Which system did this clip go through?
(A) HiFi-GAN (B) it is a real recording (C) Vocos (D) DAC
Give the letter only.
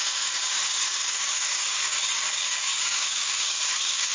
D